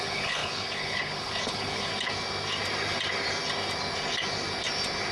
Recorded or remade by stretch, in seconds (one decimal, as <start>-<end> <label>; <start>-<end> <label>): 0.0-1.9 remade; 1.9-5.1 recorded